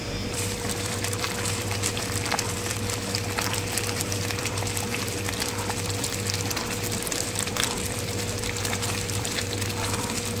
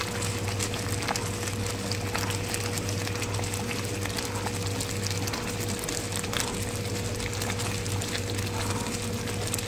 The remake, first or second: first